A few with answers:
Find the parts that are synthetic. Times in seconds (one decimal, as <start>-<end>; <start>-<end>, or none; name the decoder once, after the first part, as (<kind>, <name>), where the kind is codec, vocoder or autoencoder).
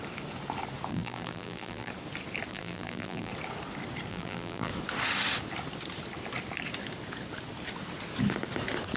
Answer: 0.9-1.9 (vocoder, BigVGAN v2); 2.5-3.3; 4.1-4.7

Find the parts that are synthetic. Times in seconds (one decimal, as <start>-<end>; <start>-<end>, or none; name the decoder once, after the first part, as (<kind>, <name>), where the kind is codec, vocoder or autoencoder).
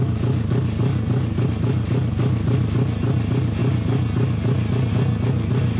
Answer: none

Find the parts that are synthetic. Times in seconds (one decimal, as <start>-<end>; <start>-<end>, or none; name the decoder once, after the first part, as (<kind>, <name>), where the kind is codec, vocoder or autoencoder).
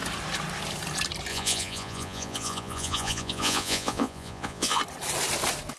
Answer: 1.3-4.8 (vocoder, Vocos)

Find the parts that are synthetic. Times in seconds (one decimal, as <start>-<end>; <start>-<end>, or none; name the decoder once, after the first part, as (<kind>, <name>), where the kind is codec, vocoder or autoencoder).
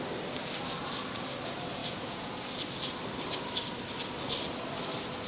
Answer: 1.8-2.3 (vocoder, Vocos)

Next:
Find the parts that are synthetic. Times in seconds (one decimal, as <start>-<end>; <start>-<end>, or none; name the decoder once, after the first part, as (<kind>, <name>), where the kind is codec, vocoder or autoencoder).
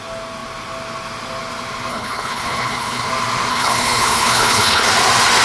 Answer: 1.9-3.1 (codec, HILCodec); 3.5-4.9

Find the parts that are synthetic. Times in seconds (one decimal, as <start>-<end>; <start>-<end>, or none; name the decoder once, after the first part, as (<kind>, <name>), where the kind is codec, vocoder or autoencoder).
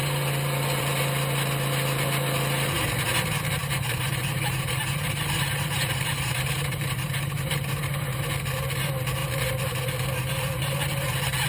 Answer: 3.6-8.3 (vocoder, BigVGAN v2)